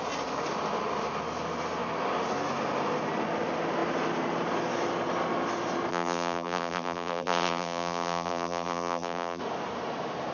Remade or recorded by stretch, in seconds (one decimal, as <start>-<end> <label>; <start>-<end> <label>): 0.0-5.9 recorded; 5.9-9.4 remade; 9.4-10.3 recorded